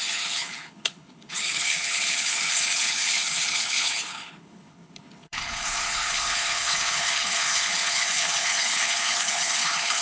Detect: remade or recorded remade